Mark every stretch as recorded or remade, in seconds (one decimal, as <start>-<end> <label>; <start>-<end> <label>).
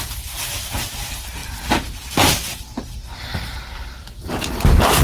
0.0-5.0 recorded